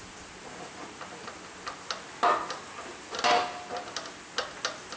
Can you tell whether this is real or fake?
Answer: real